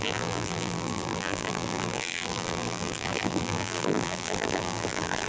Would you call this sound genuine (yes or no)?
no